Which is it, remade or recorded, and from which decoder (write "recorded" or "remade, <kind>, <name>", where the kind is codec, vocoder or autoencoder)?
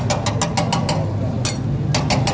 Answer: recorded